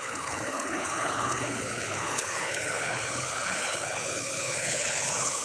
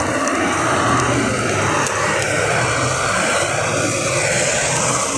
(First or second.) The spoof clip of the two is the first